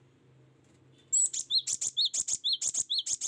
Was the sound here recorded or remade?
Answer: recorded